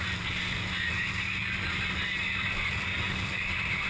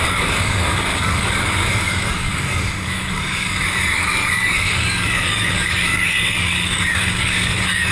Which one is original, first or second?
first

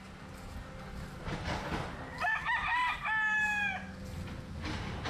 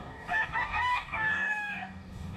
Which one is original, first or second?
first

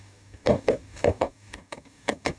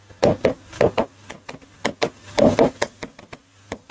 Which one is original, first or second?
second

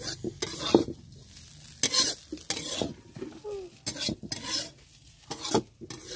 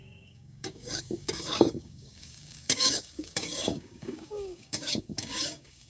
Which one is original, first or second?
first